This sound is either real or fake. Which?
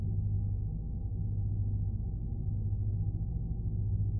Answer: real